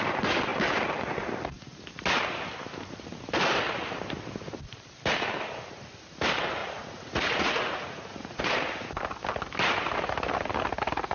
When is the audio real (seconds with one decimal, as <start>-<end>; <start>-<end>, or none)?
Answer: 0.0-6.6; 8.4-11.1